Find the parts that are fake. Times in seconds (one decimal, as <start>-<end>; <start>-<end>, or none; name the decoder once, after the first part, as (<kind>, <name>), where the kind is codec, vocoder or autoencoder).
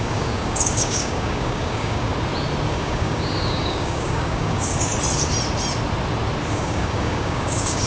0.0-2.1 (codec, DAC); 2.7-4.9; 6.5-7.9